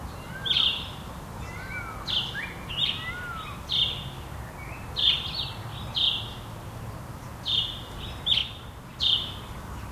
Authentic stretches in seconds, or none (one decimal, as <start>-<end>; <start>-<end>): 0.0-9.9